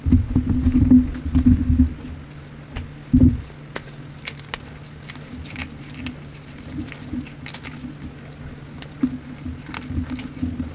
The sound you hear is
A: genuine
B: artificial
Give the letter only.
A